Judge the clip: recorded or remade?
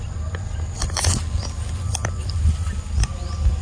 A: recorded